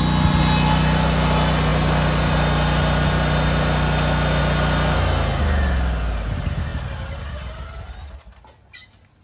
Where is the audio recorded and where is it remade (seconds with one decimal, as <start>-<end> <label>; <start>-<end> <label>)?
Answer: 0.0-9.2 recorded